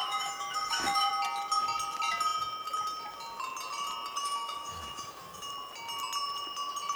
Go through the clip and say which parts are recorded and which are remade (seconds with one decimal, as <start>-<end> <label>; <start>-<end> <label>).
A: 0.0-1.1 remade; 1.1-4.2 recorded; 4.2-5.5 remade; 5.5-7.0 recorded